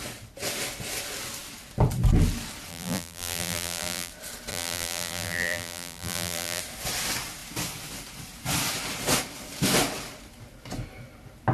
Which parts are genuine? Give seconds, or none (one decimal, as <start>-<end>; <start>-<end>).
0.0-2.7; 4.1-4.5; 6.6-11.5